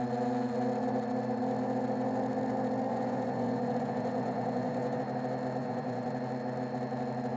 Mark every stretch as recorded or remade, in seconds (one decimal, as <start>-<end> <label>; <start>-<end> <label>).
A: 0.0-2.9 recorded; 2.9-5.0 remade; 5.0-5.6 recorded; 5.6-6.1 remade; 6.1-7.4 recorded